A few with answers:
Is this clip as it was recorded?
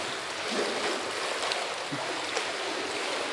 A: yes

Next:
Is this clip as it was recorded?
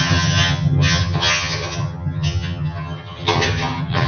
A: no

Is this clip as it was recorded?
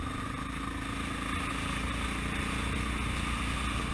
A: yes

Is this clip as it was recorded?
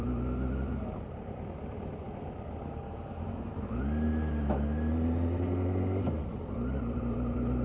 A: yes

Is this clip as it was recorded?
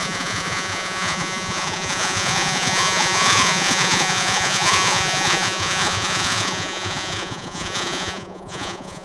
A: no